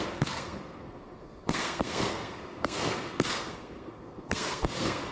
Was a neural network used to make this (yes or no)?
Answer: yes